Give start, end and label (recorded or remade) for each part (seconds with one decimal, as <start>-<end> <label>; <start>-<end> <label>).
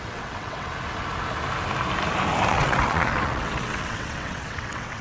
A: 0.0-0.7 remade; 0.7-2.5 recorded; 2.5-5.0 remade